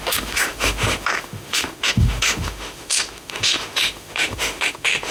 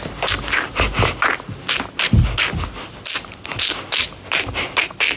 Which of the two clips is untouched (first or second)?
second